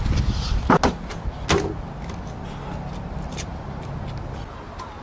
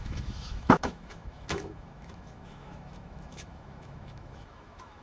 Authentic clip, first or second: first